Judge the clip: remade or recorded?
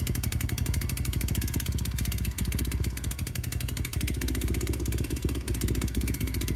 remade